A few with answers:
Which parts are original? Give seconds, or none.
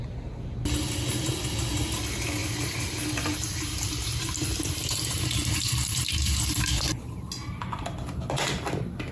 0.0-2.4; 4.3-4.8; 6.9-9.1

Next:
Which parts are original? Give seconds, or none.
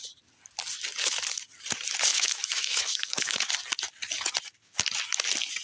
0.0-2.1; 3.5-5.6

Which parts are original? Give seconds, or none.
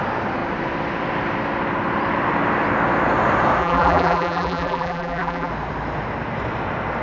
0.0-3.6; 5.5-7.0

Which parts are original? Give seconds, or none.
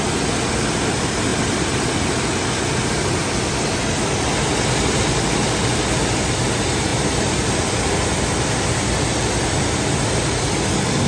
0.0-11.1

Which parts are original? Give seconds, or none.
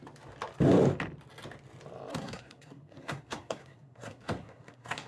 0.0-2.1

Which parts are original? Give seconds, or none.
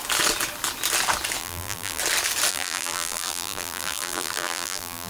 0.0-1.4; 2.0-2.5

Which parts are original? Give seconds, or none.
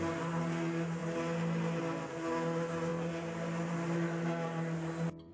0.0-5.3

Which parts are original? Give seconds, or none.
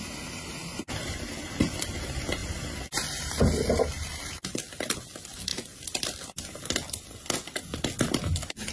0.0-0.6; 1.3-2.4; 4.3-5.5; 6.5-8.7